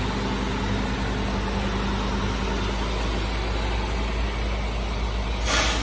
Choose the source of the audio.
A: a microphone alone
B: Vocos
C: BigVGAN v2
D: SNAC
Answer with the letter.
A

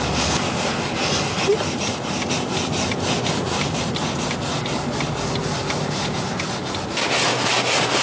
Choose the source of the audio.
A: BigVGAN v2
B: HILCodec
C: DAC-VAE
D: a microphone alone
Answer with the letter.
D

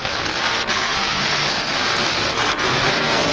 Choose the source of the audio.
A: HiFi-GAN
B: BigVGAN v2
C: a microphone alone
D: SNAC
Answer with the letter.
D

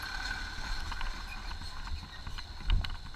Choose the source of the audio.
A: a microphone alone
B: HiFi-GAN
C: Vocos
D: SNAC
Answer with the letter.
A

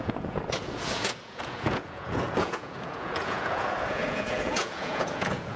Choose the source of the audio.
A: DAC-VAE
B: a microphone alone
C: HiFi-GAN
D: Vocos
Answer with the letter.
D